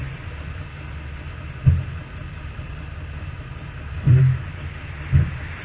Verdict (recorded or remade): recorded